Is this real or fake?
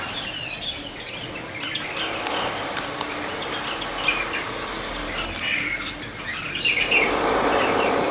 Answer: real